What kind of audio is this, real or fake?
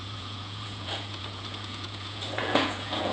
fake